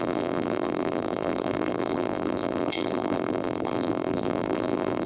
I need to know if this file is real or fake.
fake